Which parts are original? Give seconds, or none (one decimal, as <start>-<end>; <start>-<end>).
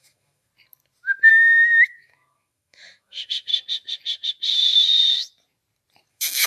0.5-1.3; 3.5-6.1